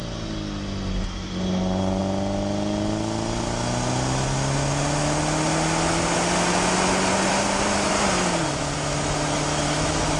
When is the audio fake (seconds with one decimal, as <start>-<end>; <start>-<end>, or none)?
0.9-2.0; 7.3-10.2